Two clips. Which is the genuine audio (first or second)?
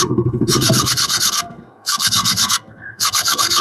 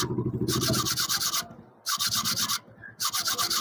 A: second